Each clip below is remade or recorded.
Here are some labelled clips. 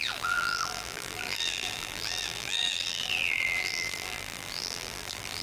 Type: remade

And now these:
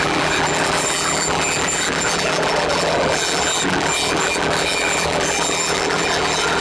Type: remade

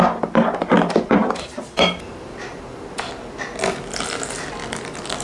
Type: recorded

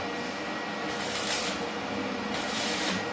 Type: remade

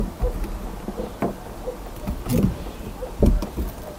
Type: recorded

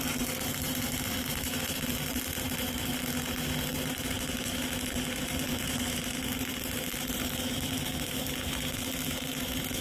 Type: recorded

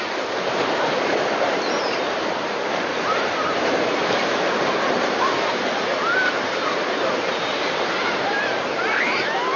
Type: remade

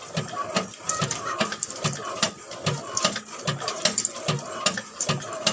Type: recorded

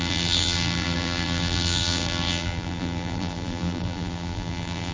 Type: remade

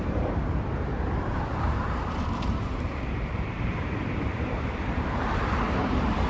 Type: remade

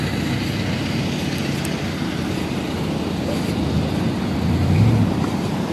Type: recorded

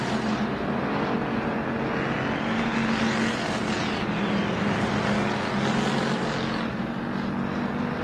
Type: recorded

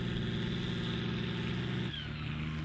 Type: recorded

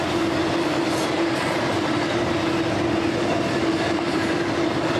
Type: recorded